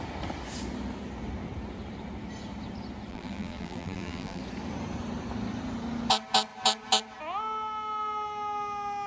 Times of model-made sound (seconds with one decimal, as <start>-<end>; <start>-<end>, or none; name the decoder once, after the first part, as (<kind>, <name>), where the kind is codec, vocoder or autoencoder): 3.1-4.4 (vocoder, BigVGAN v2)